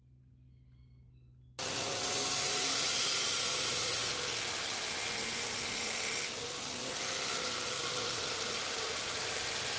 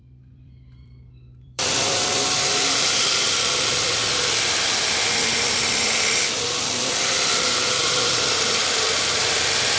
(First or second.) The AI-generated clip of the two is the second